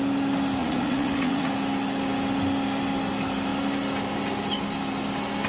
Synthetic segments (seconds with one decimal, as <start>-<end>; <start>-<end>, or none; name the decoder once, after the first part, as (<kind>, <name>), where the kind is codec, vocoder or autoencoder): 0.6-1.5 (vocoder, Vocos)